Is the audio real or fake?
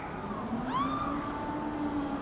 real